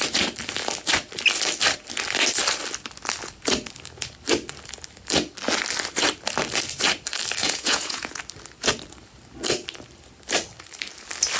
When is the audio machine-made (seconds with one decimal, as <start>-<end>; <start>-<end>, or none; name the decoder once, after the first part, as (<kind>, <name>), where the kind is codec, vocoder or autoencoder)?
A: 7.4-8.2 (vocoder, Vocos)